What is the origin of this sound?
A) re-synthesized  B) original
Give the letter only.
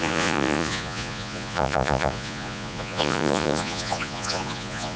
A